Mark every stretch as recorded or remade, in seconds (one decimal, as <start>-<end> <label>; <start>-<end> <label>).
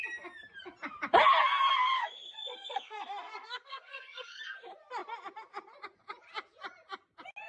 0.0-2.0 recorded; 2.0-4.4 remade; 4.4-7.5 recorded